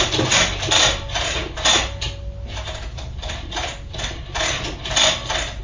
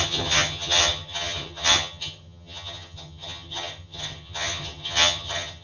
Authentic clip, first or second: first